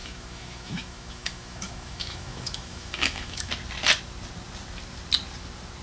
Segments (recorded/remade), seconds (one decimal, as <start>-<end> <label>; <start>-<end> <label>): 0.0-3.5 remade; 3.5-5.8 recorded